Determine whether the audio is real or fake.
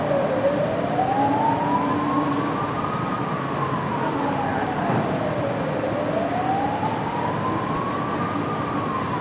real